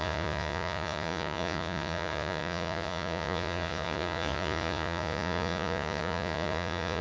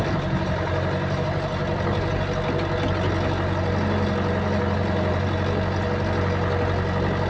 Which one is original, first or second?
second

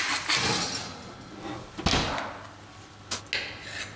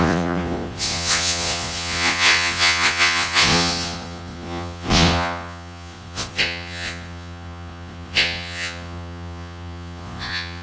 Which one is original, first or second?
first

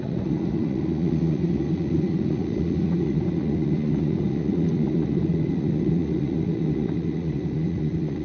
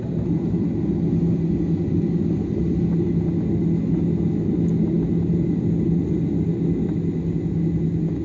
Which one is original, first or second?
second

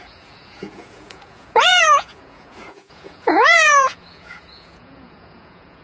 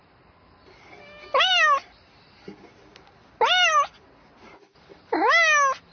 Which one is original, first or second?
second